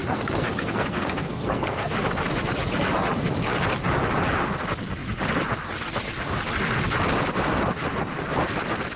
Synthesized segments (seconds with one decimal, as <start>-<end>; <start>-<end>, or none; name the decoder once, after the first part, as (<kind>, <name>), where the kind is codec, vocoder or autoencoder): 0.0-1.9 (codec, SNAC)